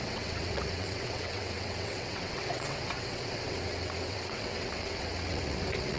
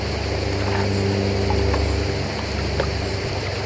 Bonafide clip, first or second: second